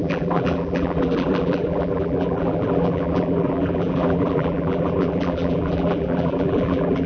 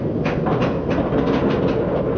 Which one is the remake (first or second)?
first